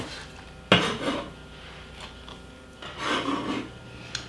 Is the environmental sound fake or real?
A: real